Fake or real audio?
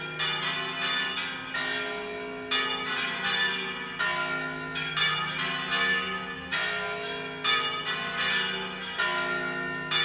real